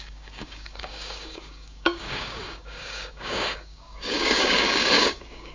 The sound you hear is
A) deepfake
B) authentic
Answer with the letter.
A